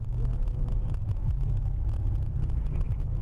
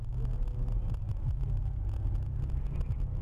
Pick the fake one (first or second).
first